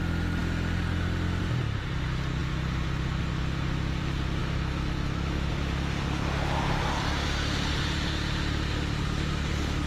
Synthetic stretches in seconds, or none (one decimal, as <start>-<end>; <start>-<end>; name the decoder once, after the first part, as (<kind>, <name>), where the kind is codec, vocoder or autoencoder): 4.4-5.5 (autoencoder, DAC-VAE)